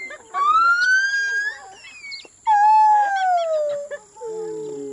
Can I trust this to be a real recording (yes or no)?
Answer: yes